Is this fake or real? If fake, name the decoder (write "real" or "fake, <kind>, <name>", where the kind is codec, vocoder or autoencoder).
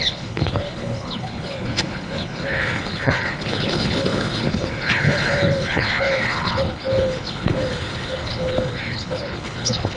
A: fake, codec, HILCodec